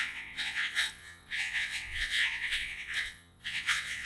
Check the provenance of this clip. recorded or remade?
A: remade